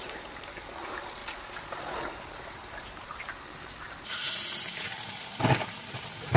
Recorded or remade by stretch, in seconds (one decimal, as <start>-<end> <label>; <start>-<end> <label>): 0.0-1.2 remade; 1.2-2.1 recorded; 2.1-6.4 remade